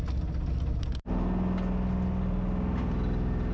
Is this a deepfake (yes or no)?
no